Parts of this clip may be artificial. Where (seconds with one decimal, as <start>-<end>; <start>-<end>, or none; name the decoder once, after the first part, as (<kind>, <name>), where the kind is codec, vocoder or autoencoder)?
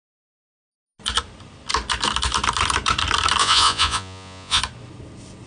3.4-4.6 (vocoder, Vocos)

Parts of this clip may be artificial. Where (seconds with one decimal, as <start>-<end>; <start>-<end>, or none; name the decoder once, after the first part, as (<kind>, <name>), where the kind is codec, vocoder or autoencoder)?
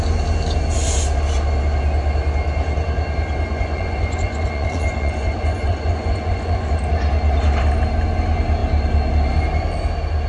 3.5-6.7 (vocoder, Vocos)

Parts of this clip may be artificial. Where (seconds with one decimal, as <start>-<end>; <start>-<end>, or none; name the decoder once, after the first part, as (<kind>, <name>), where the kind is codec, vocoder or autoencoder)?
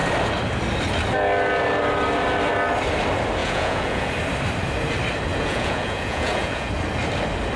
3.4-4.1 (vocoder, Vocos); 5.3-6.7